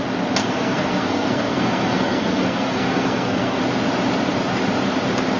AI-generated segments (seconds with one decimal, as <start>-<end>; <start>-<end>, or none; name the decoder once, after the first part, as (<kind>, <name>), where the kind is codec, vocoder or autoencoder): 0.4-3.6 (codec, SNAC)